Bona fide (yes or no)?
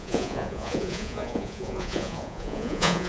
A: no